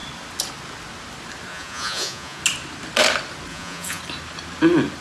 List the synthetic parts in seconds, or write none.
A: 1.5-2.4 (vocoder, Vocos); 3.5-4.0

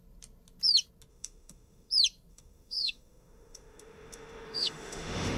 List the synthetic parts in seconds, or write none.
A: 1.1-1.9 (autoencoder, DAC-VAE); 2.3-5.4

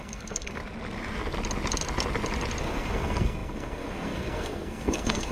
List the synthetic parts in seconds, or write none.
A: 0.0-0.6 (codec, SNAC); 2.6-5.3

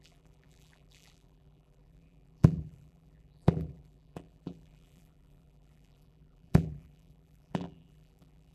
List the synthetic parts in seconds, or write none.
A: 0.0-8.5 (vocoder, BigVGAN v2)

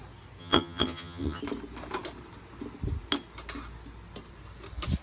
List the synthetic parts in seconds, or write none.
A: 0.4-1.4 (vocoder, HiFi-GAN)

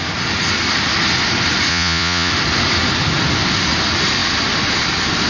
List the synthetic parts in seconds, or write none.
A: 1.7-2.3 (vocoder, Vocos)

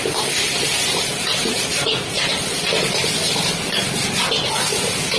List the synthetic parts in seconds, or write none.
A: none

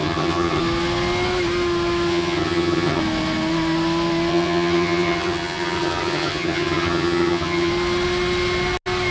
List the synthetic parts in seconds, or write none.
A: 0.0-0.6 (vocoder, HiFi-GAN); 2.1-3.0; 4.3-7.7